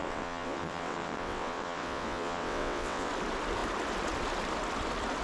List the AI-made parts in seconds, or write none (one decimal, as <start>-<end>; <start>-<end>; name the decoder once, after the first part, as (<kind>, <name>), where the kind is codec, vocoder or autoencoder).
0.0-3.1 (vocoder, WaveNeXt)

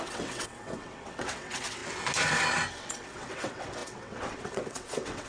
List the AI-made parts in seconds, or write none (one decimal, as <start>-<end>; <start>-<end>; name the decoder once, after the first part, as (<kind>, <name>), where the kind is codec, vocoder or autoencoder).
0.0-1.8 (vocoder, WaveNeXt); 2.7-5.3

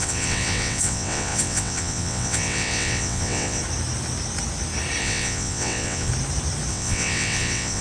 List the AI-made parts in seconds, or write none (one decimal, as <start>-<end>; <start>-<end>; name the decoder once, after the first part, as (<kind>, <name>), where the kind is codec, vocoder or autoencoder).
0.0-3.6 (vocoder, WaveNeXt); 5.0-6.1; 6.7-7.8